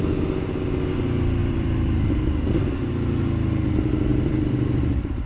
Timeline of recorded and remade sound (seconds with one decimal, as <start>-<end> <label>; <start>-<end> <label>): 0.0-1.4 recorded; 1.4-2.9 remade; 2.9-4.1 recorded; 4.1-5.3 remade